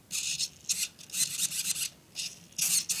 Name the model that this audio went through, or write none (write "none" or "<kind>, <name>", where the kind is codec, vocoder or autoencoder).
none